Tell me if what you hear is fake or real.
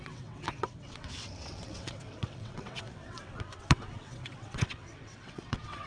fake